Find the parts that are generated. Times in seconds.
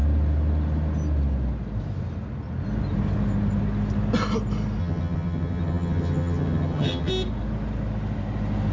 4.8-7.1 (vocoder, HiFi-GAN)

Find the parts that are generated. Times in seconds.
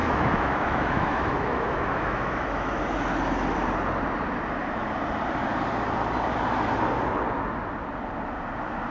0.0-2.8 (autoencoder, DAC-VAE)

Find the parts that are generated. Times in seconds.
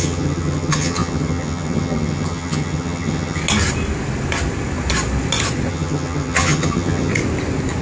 0.0-3.4 (vocoder, HiFi-GAN); 5.7-7.1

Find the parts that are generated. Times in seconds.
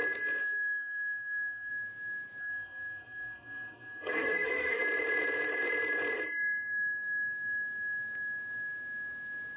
0.4-1.7 (codec, SNAC); 2.4-4.8